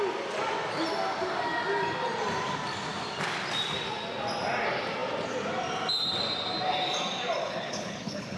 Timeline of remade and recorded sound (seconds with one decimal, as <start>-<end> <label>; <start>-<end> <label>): 0.0-7.4 recorded; 7.4-8.4 remade